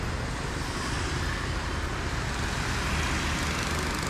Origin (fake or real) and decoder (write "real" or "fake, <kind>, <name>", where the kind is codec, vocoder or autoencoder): real